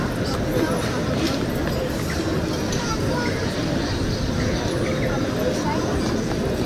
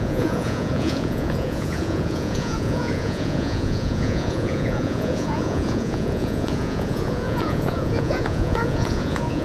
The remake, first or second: second